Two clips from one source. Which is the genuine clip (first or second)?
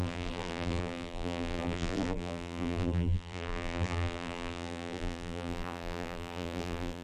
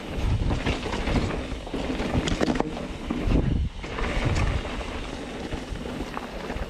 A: second